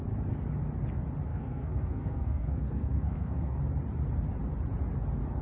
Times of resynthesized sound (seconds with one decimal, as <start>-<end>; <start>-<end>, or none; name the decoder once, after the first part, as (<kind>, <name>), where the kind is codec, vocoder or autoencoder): 1.3-3.6 (codec, SNAC)